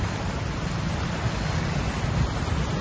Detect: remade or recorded recorded